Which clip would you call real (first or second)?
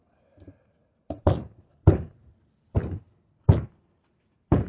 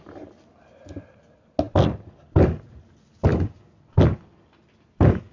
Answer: second